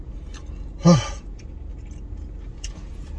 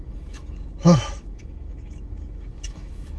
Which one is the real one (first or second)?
first